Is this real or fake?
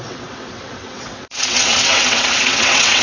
fake